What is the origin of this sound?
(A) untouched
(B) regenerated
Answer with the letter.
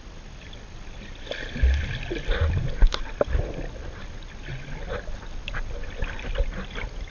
A